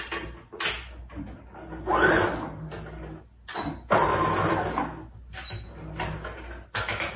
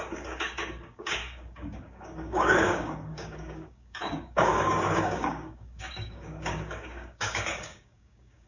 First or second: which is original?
first